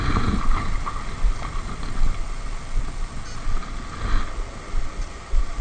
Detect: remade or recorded recorded